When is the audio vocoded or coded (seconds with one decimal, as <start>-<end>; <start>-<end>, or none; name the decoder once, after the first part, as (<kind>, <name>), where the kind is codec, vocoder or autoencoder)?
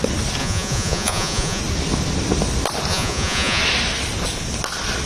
0.4-1.6 (vocoder, Vocos); 2.9-3.6